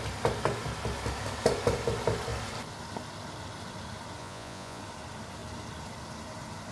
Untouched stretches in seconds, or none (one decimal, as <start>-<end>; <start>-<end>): 0.0-4.2; 4.8-6.7